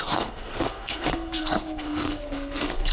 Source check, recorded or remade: remade